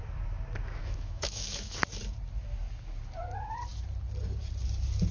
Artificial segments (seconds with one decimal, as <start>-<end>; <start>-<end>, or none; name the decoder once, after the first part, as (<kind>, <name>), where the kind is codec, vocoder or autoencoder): 0.8-1.8 (autoencoder, DAC-VAE)